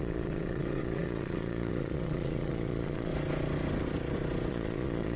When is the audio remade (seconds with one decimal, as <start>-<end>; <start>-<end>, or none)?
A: 0.0-3.1; 4.5-5.2